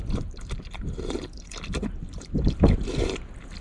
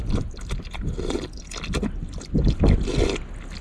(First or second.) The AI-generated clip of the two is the first